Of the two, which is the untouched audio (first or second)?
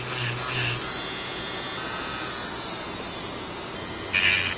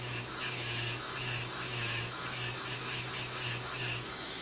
first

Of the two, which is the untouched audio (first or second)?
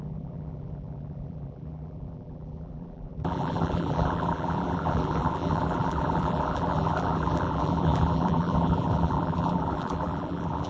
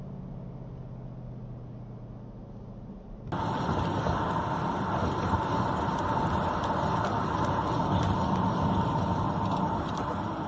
second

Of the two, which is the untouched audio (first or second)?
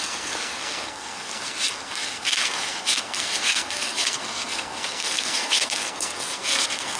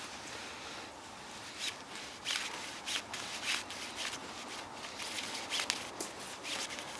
second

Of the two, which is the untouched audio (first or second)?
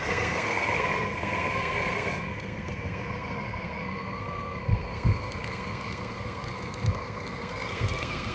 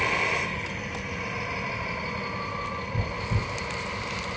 second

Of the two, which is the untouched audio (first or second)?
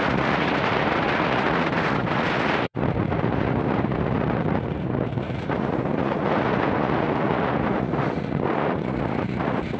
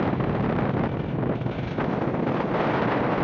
second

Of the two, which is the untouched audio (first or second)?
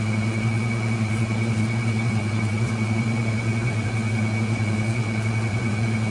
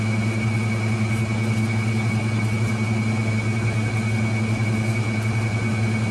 second